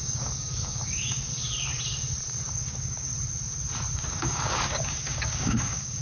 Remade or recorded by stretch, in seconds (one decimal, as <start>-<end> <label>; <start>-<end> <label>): 0.0-1.3 remade; 1.3-2.5 recorded; 2.5-3.1 remade; 3.1-3.9 recorded; 3.9-6.0 remade